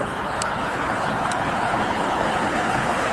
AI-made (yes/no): yes